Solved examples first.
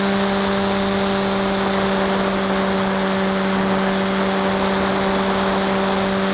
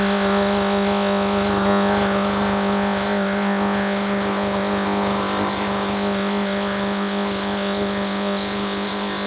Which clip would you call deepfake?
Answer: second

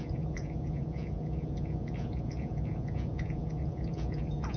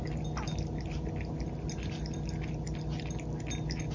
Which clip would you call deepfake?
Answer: first